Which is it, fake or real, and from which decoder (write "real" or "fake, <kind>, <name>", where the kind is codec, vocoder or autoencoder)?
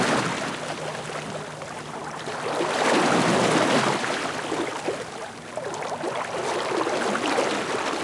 real